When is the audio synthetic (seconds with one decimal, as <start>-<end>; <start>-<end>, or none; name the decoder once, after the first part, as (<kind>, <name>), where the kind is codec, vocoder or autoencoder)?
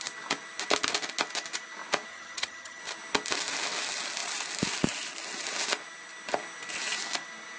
2.1-2.8 (vocoder, HiFi-GAN)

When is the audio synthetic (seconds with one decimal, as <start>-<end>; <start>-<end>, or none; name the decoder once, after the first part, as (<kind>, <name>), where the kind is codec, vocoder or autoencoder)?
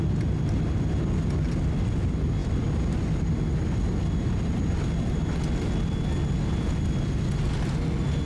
none